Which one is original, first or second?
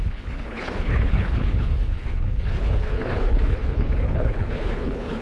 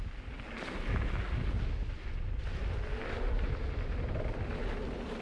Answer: second